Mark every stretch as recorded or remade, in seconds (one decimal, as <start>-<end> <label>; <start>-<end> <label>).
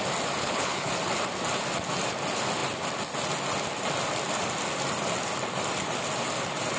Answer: 0.0-0.4 recorded; 0.4-0.9 remade; 0.9-6.8 recorded